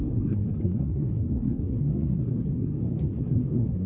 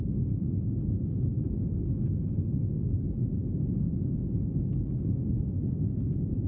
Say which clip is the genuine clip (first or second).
second